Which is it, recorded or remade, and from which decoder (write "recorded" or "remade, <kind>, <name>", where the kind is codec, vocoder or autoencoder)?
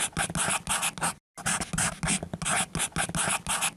recorded